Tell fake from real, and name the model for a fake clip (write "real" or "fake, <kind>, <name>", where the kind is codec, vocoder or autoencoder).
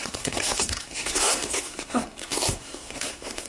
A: fake, codec, SNAC